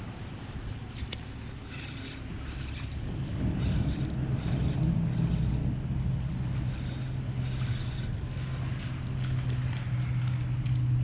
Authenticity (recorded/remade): recorded